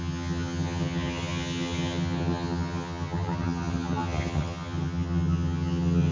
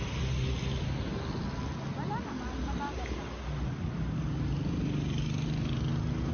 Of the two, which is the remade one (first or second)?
first